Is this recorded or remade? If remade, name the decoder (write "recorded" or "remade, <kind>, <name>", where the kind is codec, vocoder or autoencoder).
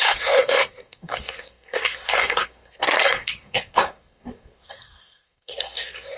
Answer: remade, codec, SNAC